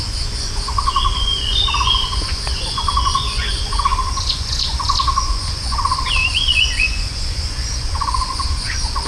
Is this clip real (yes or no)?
no